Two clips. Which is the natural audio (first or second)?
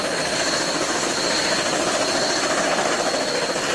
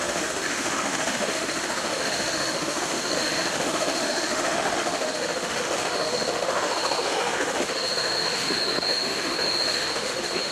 first